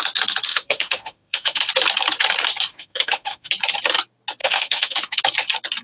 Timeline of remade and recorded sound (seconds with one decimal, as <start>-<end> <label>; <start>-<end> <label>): 0.0-0.5 recorded; 0.5-1.6 remade; 1.6-2.7 recorded; 2.7-3.5 remade; 3.5-4.4 recorded; 4.4-5.2 remade; 5.2-5.8 recorded